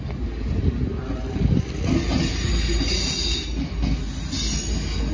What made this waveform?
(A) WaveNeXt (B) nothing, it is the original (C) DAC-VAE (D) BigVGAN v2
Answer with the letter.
B